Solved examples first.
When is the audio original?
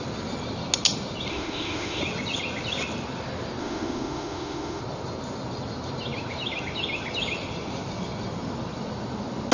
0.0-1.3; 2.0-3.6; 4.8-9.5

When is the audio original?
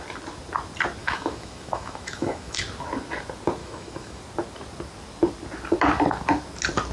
0.0-1.0; 2.6-3.6; 4.2-6.9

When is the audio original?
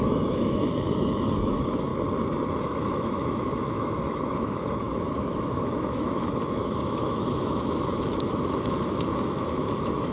1.9-2.6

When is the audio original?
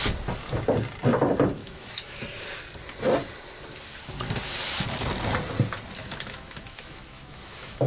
0.0-1.6; 2.2-6.0